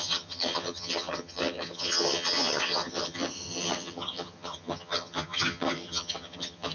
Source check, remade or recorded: remade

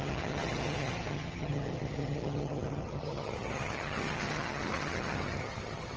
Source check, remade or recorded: remade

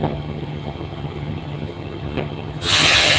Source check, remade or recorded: remade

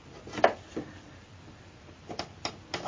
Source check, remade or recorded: recorded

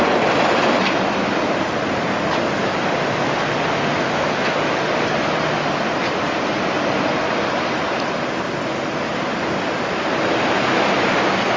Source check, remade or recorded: recorded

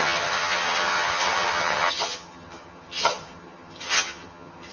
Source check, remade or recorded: remade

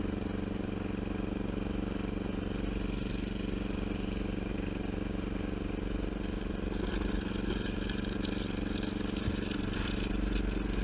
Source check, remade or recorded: recorded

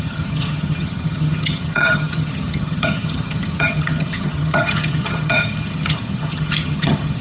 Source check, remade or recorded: remade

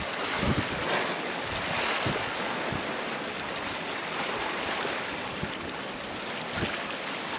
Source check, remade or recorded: recorded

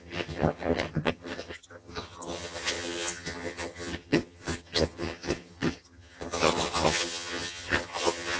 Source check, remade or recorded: remade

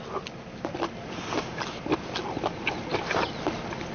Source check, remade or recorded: recorded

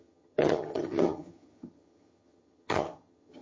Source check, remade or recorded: remade